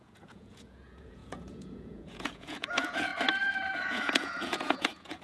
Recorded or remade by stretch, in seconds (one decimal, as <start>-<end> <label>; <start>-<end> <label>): 0.0-3.1 remade; 3.1-3.8 recorded; 3.8-5.2 remade